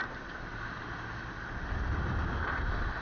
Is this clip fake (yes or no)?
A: no